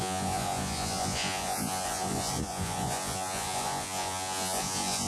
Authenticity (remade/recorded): remade